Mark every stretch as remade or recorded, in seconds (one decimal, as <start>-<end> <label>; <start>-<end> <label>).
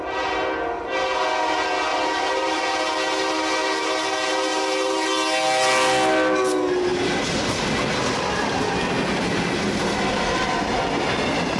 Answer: 0.0-1.9 recorded; 1.9-2.6 remade; 2.6-4.5 recorded; 4.5-5.1 remade; 5.1-11.6 recorded